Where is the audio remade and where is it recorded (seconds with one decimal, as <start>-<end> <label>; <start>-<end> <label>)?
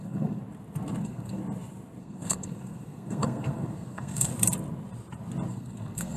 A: 0.0-0.4 remade; 0.4-1.0 recorded; 1.0-1.4 remade; 1.4-2.0 recorded; 2.0-4.3 remade; 4.3-5.5 recorded; 5.5-6.2 remade